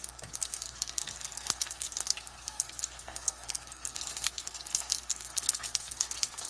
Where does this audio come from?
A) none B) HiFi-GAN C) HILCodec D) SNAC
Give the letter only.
D